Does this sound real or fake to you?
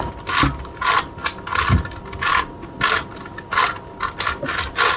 real